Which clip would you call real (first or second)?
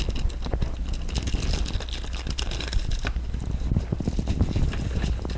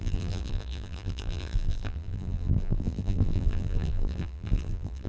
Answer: first